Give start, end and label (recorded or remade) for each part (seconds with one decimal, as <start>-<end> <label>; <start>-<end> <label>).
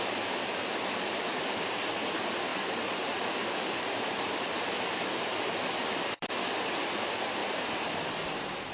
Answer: 0.0-2.5 recorded; 2.5-6.3 remade; 6.3-7.4 recorded; 7.4-8.7 remade